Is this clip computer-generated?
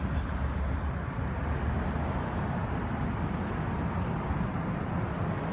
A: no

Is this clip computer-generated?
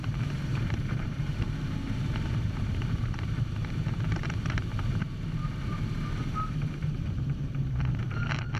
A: yes